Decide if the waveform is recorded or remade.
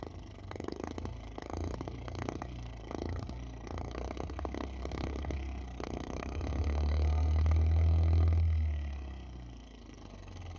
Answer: remade